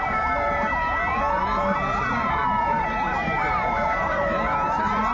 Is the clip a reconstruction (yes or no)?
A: yes